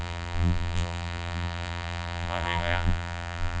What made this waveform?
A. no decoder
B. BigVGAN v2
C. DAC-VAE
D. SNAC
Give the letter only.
B